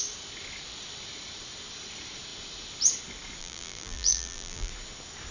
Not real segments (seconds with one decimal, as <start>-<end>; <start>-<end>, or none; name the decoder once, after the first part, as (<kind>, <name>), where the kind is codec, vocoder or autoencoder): 3.4-4.7 (vocoder, BigVGAN v2)